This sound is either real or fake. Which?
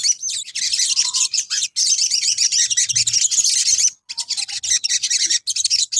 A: real